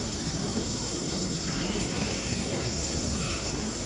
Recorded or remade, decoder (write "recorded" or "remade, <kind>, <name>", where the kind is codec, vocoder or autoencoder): remade, codec, SNAC